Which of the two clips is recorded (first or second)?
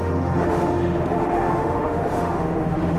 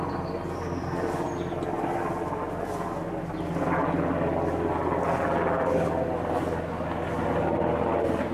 second